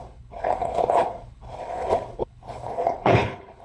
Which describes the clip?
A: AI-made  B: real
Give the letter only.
A